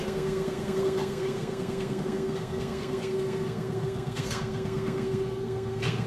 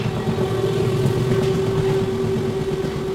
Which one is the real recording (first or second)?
second